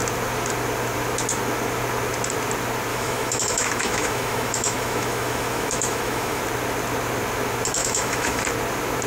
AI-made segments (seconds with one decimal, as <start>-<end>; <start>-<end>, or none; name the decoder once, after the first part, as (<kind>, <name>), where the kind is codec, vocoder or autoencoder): 2.9-6.4 (autoencoder, DAC-VAE); 7.8-8.4